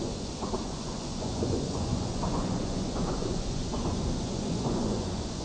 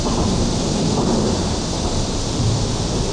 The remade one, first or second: first